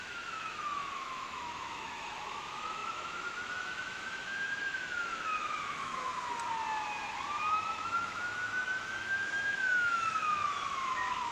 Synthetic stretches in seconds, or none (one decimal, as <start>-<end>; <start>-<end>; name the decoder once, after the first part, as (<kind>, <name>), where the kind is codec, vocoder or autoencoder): 0.0-6.1 (autoencoder, DAC-VAE); 7.5-11.3